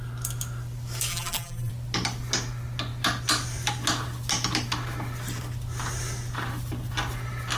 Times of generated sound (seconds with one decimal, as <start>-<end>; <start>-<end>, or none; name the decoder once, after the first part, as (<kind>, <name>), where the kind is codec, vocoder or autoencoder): 1.1-1.7 (vocoder, BigVGAN v2)